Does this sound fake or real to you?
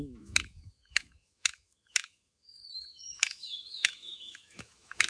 fake